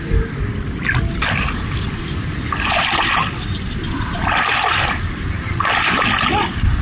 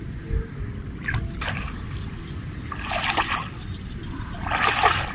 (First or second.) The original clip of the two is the second